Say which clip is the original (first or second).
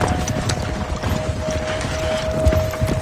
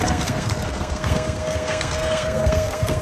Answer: first